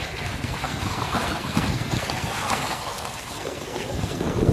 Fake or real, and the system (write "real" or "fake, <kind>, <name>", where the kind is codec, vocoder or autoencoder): fake, codec, SNAC